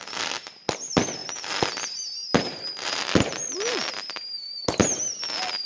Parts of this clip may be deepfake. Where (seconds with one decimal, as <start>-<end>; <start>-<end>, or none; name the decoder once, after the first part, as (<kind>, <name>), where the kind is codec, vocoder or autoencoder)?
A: none